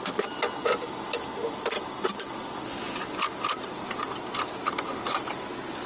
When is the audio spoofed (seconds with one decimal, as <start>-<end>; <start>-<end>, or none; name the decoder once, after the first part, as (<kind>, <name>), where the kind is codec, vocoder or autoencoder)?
none